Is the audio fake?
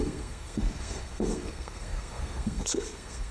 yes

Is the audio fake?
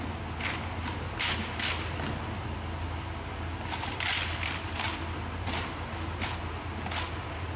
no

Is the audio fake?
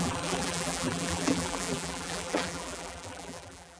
yes